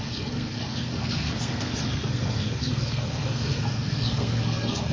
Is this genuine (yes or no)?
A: no